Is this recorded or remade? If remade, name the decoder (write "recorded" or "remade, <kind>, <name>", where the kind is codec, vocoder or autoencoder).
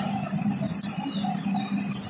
recorded